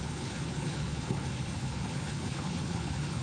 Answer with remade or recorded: remade